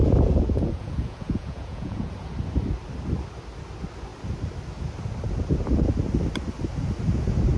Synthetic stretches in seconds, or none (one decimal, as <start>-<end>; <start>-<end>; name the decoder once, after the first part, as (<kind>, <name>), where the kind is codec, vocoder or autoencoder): 0.0-2.1 (vocoder, Vocos)